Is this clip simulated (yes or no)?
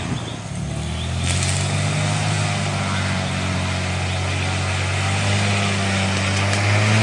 no